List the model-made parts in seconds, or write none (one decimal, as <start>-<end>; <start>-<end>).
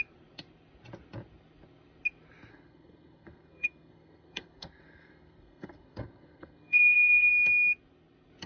2.5-7.3